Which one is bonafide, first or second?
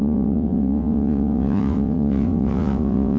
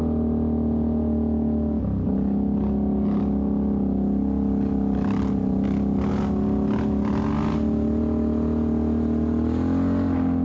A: second